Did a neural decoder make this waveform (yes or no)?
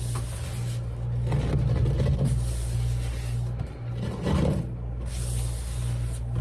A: no